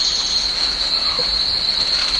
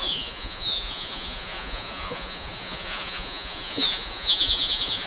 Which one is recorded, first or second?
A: first